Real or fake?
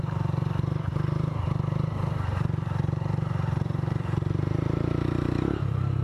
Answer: fake